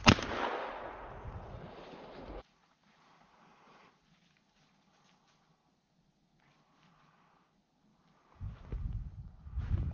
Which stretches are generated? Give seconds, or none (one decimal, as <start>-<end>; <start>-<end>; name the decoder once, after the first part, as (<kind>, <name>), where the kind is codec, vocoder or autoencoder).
0.6-3.9 (vocoder, Vocos)